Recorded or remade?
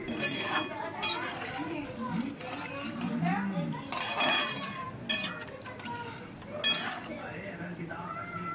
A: recorded